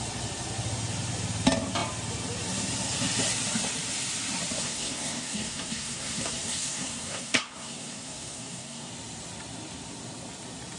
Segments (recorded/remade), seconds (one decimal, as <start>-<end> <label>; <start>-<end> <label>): 0.0-4.6 recorded; 4.6-8.9 remade; 8.9-10.8 recorded